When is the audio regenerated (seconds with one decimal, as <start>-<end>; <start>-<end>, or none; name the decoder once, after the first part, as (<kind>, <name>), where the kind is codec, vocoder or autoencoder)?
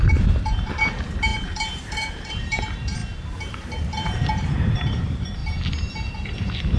0.0-3.0 (vocoder, BigVGAN v2); 3.5-5.4; 6.1-6.8